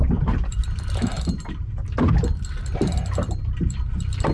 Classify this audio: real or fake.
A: fake